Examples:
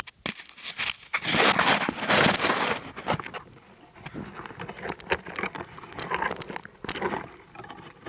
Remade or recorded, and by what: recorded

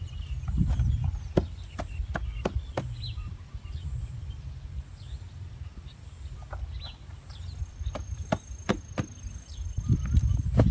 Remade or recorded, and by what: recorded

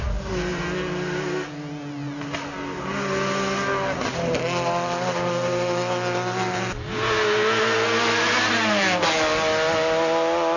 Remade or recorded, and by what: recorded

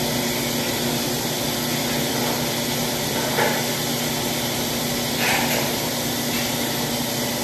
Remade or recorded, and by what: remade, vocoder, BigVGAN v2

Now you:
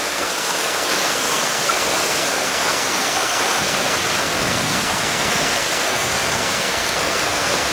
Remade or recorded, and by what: remade, codec, SNAC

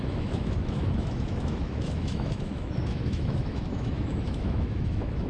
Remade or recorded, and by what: remade, autoencoder, DAC-VAE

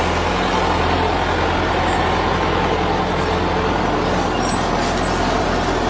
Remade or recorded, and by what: recorded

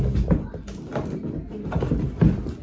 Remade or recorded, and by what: recorded